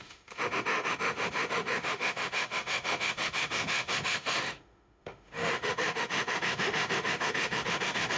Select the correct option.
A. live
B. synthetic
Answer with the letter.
B